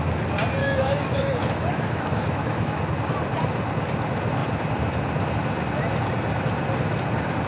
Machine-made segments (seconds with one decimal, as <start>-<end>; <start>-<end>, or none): 0.6-2.8

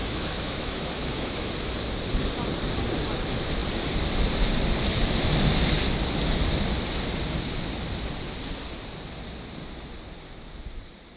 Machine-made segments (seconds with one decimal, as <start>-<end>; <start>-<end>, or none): 0.0-1.5